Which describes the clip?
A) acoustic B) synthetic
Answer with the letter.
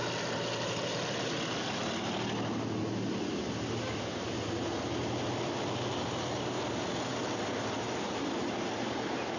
A